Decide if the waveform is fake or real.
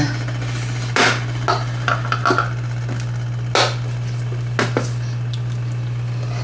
real